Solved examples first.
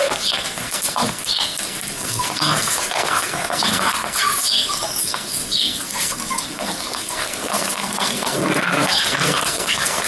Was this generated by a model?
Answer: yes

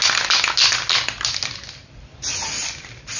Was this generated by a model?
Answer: no